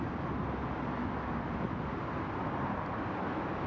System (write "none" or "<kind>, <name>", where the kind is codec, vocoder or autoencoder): none